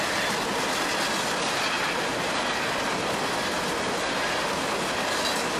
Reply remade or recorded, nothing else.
recorded